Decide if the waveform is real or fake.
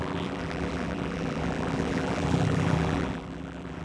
fake